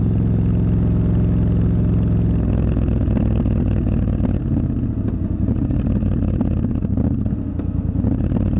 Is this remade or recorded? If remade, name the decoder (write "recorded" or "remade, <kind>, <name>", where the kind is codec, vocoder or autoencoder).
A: recorded